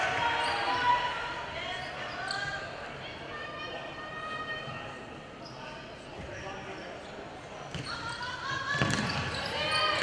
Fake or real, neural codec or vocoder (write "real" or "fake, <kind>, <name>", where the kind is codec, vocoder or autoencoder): real